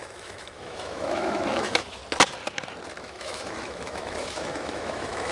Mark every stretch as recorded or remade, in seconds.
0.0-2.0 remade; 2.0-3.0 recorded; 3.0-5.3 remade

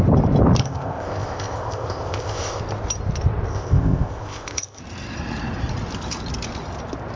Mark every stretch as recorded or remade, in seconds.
0.0-0.6 recorded; 0.6-2.6 remade; 2.6-3.5 recorded; 3.5-4.8 remade; 4.8-7.2 recorded

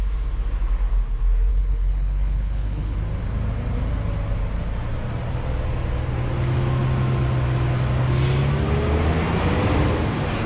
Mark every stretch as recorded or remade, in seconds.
0.0-1.5 recorded; 1.5-3.0 remade; 3.0-10.5 recorded

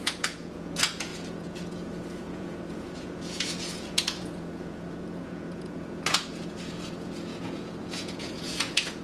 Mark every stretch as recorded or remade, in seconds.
0.0-9.0 remade

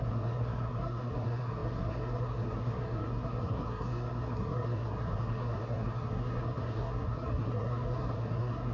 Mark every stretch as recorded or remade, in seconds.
0.0-8.7 remade